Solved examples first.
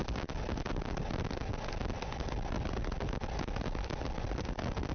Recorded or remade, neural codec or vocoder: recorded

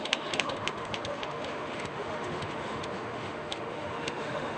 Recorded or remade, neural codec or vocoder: remade, autoencoder, DAC-VAE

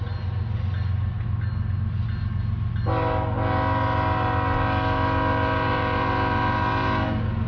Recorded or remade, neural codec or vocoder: recorded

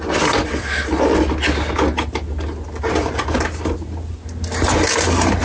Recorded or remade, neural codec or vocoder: recorded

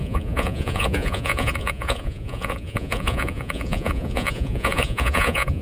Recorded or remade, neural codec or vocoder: remade, vocoder, Vocos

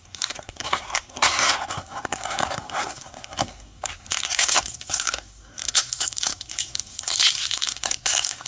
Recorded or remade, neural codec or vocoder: remade, codec, SNAC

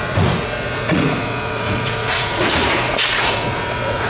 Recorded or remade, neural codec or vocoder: remade, vocoder, Vocos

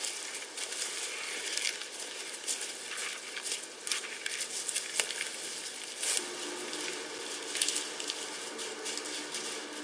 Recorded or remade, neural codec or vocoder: recorded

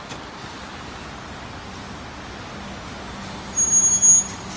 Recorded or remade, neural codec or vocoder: recorded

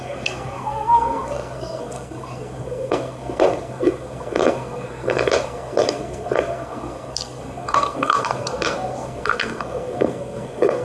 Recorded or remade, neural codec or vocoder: remade, codec, SNAC